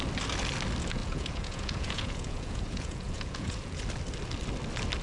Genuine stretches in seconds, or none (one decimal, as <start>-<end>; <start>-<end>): 0.0-1.0; 3.8-5.0